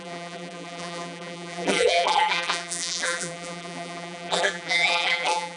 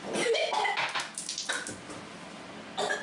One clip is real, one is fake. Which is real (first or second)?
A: second